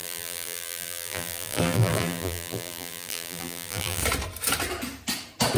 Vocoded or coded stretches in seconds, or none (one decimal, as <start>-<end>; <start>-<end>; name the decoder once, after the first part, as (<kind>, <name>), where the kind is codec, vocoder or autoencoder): 0.0-4.0 (vocoder, BigVGAN v2)